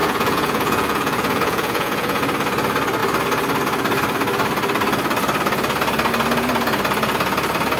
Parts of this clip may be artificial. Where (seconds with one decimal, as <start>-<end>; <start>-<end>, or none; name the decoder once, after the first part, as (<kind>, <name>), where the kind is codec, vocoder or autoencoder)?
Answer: 0.0-2.2 (vocoder, Vocos)